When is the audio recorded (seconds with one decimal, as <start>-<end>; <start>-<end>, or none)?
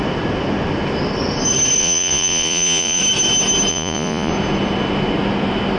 0.0-1.8; 3.0-3.7; 4.3-5.8